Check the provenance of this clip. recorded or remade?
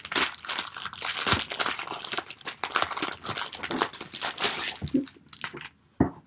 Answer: recorded